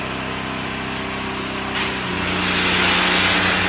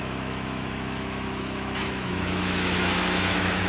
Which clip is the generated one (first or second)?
second